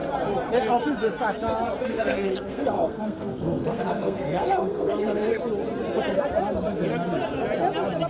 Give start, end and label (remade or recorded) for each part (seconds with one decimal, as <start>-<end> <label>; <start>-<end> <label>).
0.0-1.9 recorded; 1.9-5.4 remade; 5.4-8.1 recorded